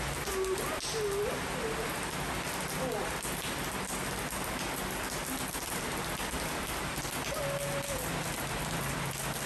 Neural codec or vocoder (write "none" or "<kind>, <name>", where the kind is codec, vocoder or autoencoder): none